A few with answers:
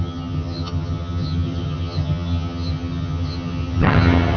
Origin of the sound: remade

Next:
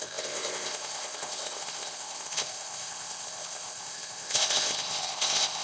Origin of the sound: remade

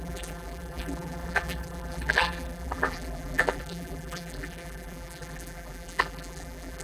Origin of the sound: remade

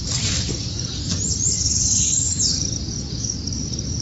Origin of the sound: remade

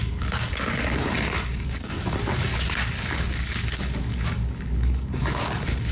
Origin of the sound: remade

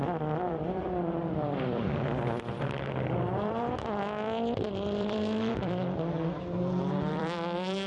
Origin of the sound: remade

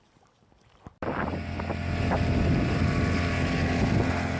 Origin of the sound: recorded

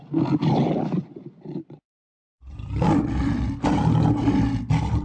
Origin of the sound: recorded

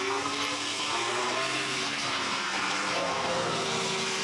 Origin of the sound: remade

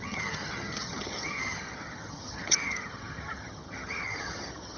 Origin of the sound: remade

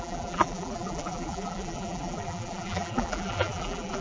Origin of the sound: remade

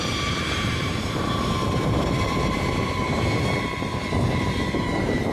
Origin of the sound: remade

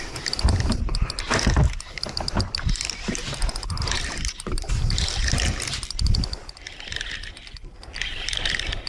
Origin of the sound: recorded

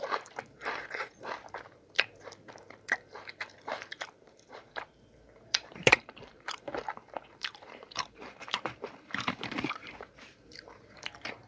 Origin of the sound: remade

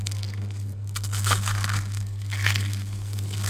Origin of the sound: remade